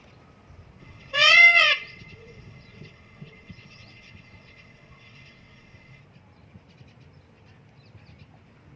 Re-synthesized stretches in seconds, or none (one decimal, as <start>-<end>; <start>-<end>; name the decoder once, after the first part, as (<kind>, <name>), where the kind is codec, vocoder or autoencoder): 0.8-6.0 (vocoder, WaveNeXt)